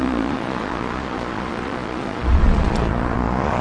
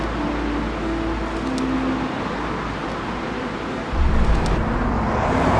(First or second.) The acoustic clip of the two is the second